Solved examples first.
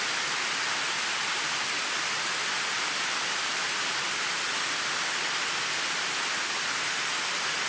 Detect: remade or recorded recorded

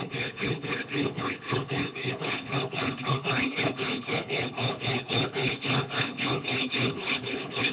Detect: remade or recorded remade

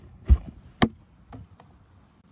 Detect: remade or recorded recorded